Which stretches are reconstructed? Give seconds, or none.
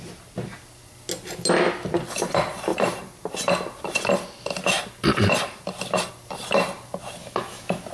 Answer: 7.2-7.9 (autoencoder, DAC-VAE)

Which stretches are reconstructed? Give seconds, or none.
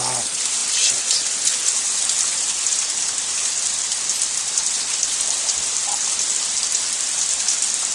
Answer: none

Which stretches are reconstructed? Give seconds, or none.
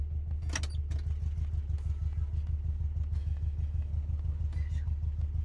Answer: 3.2-3.9 (autoencoder, DAC-VAE)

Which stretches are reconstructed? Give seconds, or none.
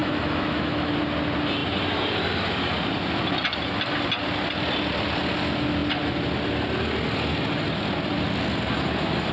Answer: 0.0-0.9 (autoencoder, DAC-VAE)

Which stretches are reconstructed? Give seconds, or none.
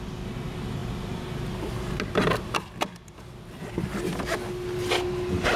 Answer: none